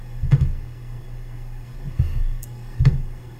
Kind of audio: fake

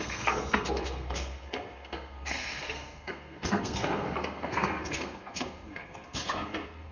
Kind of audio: fake